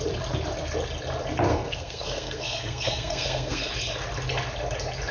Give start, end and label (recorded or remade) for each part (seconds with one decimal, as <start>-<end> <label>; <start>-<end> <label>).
0.0-1.5 recorded; 1.5-3.7 remade; 3.7-5.1 recorded